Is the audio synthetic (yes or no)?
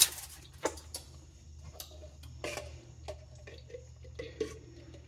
no